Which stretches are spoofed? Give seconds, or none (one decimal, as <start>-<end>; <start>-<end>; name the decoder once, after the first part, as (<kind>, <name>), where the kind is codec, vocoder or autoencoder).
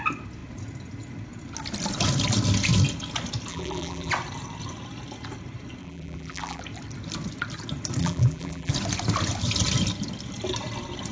3.5-4.1 (vocoder, BigVGAN v2); 5.8-6.6; 8.0-8.7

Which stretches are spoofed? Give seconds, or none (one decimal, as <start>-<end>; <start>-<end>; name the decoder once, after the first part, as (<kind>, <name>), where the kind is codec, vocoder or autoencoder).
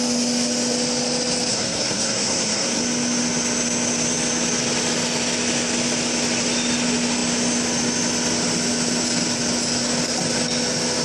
1.5-2.8 (codec, SNAC)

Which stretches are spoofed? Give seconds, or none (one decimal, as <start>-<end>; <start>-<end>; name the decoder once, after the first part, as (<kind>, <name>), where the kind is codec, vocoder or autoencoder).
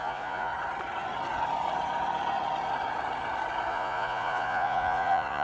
0.0-0.5 (vocoder, Vocos); 3.7-5.4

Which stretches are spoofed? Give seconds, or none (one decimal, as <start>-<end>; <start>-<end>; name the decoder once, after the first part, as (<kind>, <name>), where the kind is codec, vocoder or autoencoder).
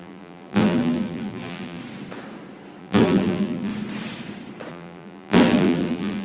0.0-1.8 (vocoder, BigVGAN v2); 2.8-3.7; 4.7-6.2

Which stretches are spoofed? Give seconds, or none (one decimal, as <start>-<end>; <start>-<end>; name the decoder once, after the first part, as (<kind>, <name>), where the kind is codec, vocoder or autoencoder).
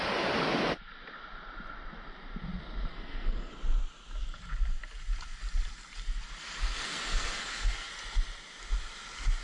2.9-3.5 (codec, SNAC); 6.6-7.9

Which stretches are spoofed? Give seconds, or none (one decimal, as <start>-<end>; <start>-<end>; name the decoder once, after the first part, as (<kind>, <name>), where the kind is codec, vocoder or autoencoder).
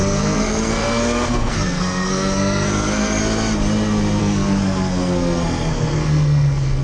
0.0-3.2 (codec, SNAC); 4.2-6.8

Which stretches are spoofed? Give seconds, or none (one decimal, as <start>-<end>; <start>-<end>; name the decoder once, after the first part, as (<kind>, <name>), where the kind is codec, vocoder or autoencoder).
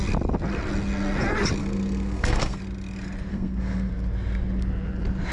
1.6-2.6 (codec, SNAC); 3.3-3.9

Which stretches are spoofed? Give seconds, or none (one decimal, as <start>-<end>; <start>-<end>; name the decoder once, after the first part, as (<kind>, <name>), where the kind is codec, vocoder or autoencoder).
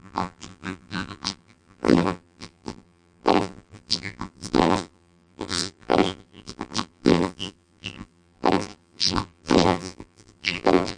0.0-11.0 (vocoder, BigVGAN v2)